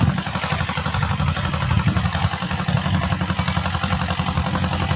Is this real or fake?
real